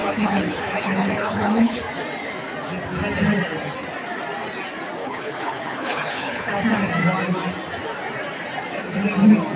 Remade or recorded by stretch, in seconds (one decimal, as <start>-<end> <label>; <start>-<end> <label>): 0.0-1.8 remade; 1.8-5.0 recorded; 5.0-6.5 remade; 6.5-9.6 recorded